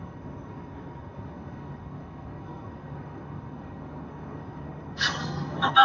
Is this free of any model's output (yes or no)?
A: no